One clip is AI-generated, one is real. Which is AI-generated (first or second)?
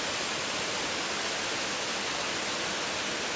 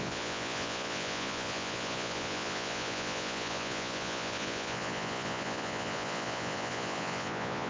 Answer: second